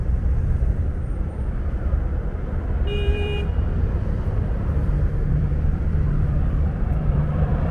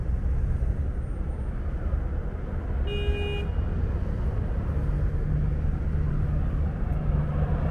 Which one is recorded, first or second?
second